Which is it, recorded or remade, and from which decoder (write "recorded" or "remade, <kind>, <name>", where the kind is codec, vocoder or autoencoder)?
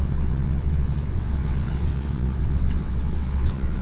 remade, vocoder, WaveNeXt